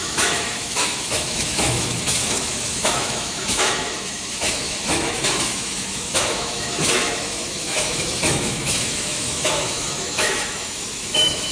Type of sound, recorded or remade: remade